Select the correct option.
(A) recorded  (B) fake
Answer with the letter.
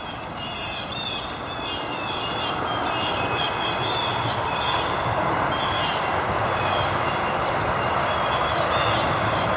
A